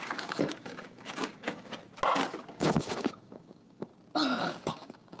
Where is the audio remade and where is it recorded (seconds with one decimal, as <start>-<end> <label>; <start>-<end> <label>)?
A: 0.0-1.8 remade; 1.8-2.5 recorded; 2.5-3.9 remade; 3.9-4.4 recorded; 4.4-5.2 remade